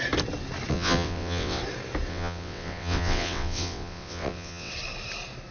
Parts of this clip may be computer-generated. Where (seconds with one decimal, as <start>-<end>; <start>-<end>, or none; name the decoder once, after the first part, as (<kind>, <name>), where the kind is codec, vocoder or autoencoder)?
0.7-1.6 (vocoder, WaveNeXt); 2.1-4.7